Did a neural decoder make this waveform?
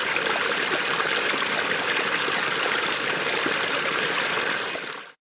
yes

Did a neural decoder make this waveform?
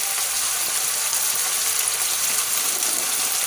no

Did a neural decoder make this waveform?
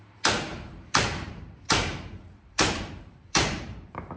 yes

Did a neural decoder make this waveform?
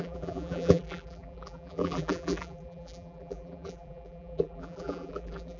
yes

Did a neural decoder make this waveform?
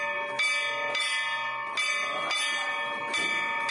no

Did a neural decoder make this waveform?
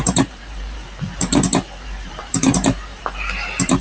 yes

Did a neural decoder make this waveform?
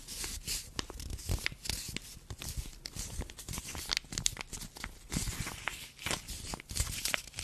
no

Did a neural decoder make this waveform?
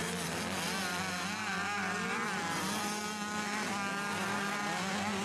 no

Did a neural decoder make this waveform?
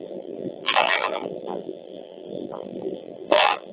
yes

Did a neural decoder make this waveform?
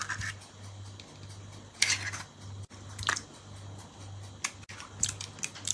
no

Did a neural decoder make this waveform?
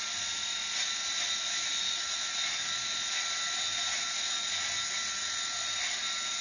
no